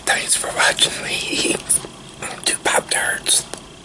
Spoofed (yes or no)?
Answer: no